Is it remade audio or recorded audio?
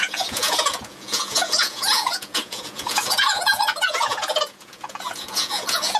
remade